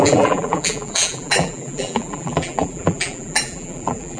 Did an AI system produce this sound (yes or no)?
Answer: yes